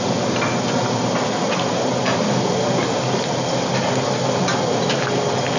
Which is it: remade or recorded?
recorded